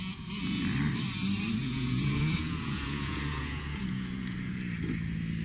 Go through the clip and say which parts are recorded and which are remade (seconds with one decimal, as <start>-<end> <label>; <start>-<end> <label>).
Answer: 0.0-0.6 remade; 0.6-1.6 recorded; 1.6-4.5 remade; 4.5-5.4 recorded